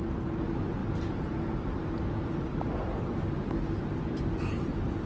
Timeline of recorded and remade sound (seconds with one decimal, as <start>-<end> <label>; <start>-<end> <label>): 0.0-5.1 recorded